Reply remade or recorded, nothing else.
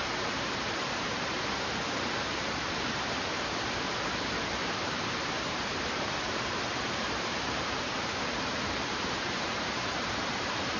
remade